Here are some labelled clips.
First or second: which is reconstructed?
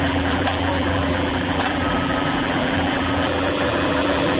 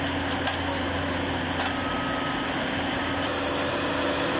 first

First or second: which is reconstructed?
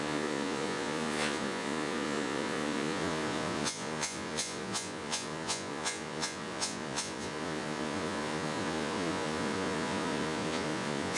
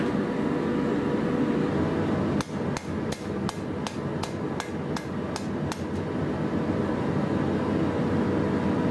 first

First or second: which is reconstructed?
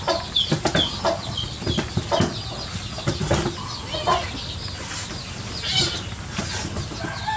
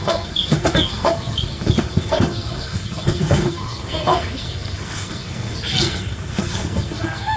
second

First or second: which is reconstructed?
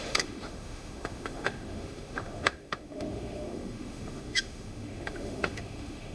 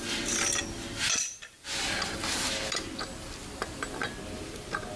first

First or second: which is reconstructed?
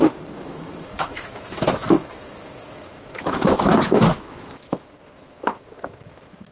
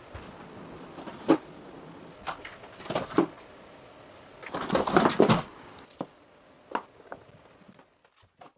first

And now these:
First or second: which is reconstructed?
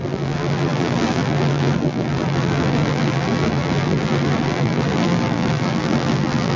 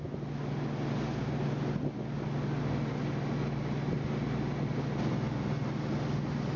first